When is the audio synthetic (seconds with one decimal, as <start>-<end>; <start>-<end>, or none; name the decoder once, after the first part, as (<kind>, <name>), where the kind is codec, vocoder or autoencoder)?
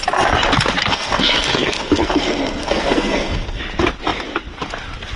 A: 0.9-3.6 (codec, SNAC)